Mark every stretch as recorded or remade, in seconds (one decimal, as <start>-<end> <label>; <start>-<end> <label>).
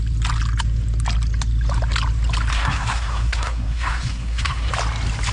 0.0-2.5 recorded; 2.5-4.7 remade; 4.7-5.3 recorded